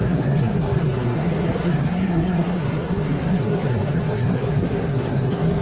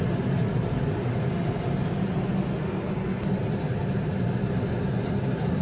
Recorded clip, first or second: second